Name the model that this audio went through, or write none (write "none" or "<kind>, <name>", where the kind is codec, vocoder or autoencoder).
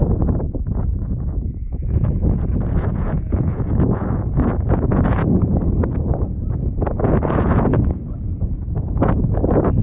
vocoder, Vocos